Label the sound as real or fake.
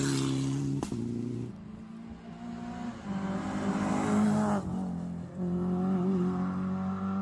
real